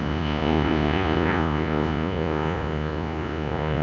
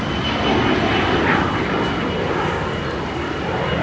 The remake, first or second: first